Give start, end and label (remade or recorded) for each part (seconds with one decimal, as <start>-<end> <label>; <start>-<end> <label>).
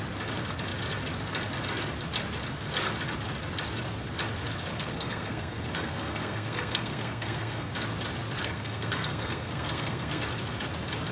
0.0-4.7 recorded; 4.7-7.7 remade; 7.7-8.4 recorded; 8.4-10.2 remade; 10.2-11.1 recorded